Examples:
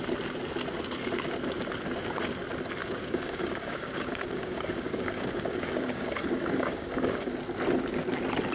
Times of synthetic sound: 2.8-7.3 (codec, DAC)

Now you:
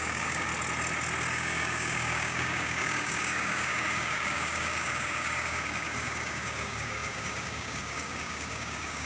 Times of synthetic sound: 0.0-0.5 (codec, DAC); 1.3-9.1

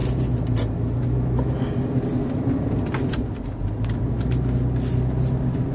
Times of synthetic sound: none

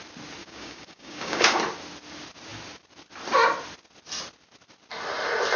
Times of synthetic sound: 0.4-1.6 (codec, DAC)

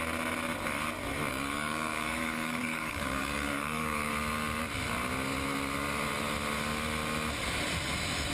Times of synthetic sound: 1.3-4.1 (codec, DAC)